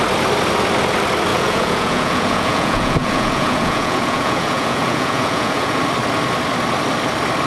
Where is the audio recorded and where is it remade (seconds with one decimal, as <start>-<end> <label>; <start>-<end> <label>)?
0.0-1.3 recorded; 1.3-5.8 remade; 5.8-7.5 recorded